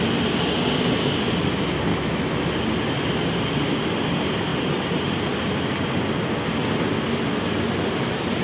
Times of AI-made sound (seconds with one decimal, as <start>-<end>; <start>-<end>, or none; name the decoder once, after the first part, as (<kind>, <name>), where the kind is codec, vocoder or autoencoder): 1.9-2.5 (autoencoder, DAC-VAE)